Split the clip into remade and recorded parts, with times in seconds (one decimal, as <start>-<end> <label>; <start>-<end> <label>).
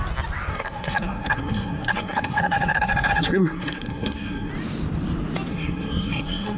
0.0-0.5 recorded; 0.5-4.5 remade; 4.5-5.5 recorded; 5.5-6.6 remade